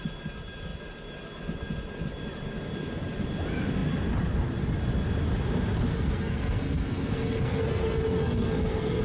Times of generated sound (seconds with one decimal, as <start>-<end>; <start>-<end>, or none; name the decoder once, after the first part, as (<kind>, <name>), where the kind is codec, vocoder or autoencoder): 5.9-9.0 (codec, SNAC)